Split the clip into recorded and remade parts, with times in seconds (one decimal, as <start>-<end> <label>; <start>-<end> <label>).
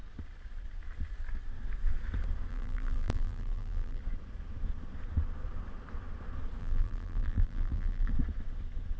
0.0-2.5 recorded; 2.5-4.0 remade; 4.0-6.6 recorded; 6.6-8.1 remade; 8.1-9.0 recorded